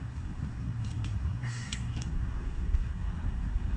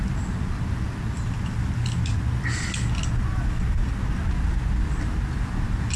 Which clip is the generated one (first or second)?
first